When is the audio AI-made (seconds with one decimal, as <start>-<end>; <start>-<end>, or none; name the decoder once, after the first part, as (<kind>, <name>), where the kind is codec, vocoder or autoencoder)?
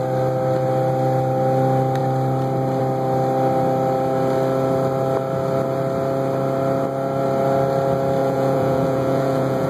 8.2-9.7 (vocoder, Vocos)